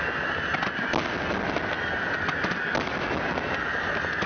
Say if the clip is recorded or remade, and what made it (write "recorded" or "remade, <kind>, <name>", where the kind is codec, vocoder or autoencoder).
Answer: recorded